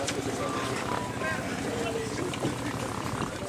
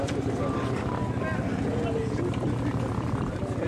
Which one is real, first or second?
second